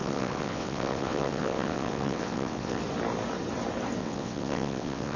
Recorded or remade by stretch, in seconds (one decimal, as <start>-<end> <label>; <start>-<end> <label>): 0.0-2.8 remade; 2.8-4.0 recorded; 4.0-5.2 remade